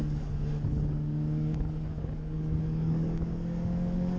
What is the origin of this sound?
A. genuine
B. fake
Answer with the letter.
B